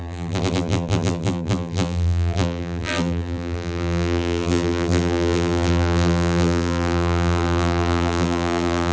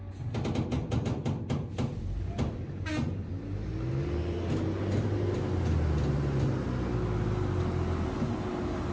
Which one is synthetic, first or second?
first